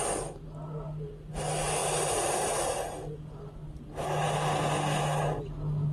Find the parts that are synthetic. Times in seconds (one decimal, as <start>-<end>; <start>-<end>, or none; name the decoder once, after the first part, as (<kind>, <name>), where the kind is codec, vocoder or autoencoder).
none